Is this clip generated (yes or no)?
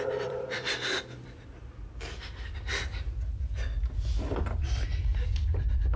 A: yes